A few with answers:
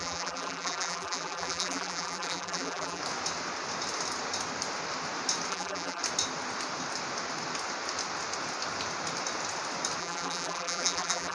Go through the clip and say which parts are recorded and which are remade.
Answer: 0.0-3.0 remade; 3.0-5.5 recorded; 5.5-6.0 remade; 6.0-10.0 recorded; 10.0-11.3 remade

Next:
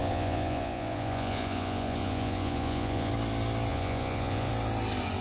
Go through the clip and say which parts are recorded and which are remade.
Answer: 0.0-3.1 remade; 3.1-3.7 recorded; 3.7-4.5 remade; 4.5-5.2 recorded

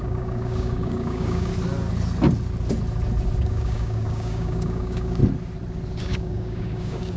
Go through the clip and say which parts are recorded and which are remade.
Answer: 0.0-1.5 remade; 1.5-3.4 recorded; 3.4-5.2 remade; 5.2-6.0 recorded; 6.0-7.2 remade

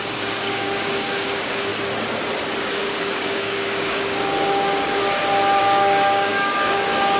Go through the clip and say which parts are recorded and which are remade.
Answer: 0.0-1.7 remade; 1.7-2.6 recorded; 2.6-5.0 remade; 5.0-5.6 recorded; 5.6-7.2 remade